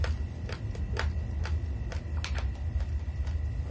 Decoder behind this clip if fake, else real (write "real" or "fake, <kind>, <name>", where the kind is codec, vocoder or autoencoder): real